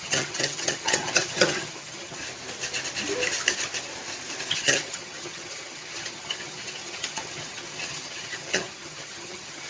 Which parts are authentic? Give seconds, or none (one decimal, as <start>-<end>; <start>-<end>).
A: 2.2-4.5